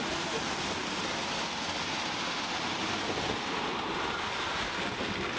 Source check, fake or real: real